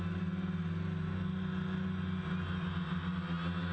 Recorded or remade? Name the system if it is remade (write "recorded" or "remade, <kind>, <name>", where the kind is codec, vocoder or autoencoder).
recorded